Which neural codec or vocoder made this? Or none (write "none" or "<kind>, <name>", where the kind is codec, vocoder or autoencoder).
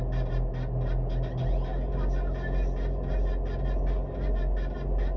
none